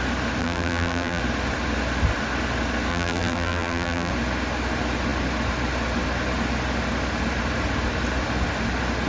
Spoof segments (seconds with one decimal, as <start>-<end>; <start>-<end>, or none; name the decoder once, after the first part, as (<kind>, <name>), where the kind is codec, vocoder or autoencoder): 0.4-1.2 (vocoder, BigVGAN v2); 2.9-4.1